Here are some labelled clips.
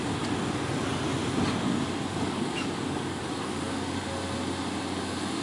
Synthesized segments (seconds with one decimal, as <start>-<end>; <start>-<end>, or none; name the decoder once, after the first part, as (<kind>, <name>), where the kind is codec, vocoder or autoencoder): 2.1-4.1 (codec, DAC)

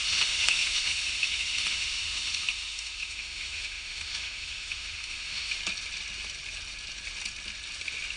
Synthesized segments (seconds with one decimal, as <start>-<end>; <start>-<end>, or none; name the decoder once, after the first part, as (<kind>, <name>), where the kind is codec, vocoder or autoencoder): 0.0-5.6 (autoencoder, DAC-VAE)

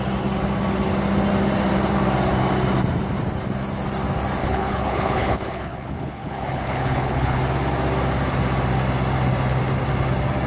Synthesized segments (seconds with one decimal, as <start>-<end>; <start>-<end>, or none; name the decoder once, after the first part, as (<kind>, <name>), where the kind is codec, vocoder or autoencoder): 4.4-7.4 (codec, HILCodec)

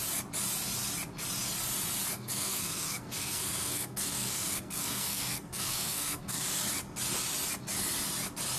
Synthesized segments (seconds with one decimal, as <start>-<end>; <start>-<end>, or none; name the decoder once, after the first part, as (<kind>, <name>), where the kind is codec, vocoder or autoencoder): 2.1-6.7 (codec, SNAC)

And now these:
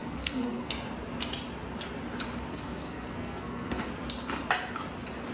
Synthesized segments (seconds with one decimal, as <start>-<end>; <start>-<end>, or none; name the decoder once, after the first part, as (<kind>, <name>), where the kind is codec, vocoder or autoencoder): 0.0-0.7 (codec, SNAC); 2.5-3.9

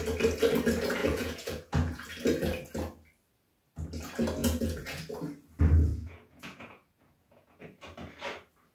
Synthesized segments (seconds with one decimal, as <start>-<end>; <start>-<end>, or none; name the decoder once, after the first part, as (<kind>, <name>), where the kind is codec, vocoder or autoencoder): 1.0-2.1 (vocoder, Vocos); 4.4-5.0; 5.9-7.6

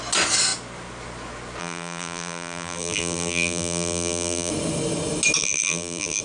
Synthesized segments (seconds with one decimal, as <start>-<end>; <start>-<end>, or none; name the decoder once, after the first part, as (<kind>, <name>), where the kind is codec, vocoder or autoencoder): 1.6-4.5 (vocoder, BigVGAN v2); 5.4-6.2